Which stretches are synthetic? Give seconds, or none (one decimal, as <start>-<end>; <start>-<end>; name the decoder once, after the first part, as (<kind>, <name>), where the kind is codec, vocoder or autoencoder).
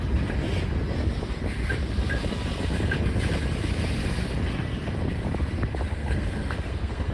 5.9-7.1 (codec, SNAC)